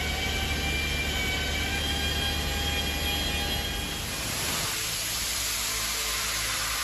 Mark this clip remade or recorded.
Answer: recorded